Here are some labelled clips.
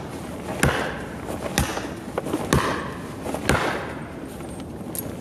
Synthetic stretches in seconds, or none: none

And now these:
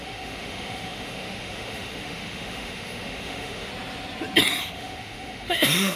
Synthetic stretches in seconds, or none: 0.0-3.7 (autoencoder, DAC-VAE); 4.7-6.0

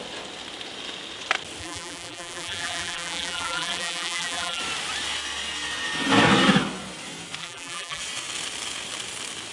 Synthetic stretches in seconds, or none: 1.6-4.6 (vocoder, BigVGAN v2); 7.4-8.0

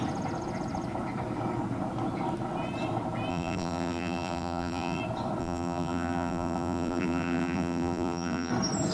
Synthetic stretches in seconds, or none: 3.3-5.0 (vocoder, BigVGAN v2); 5.4-8.5

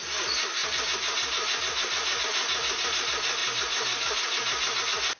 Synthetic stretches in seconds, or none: none